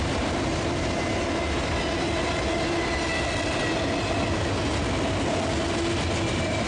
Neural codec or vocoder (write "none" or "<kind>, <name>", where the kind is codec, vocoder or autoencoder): none